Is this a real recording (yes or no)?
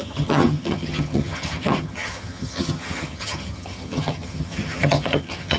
no